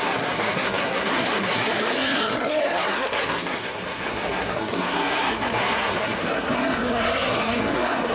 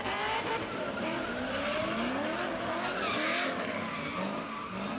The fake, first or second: first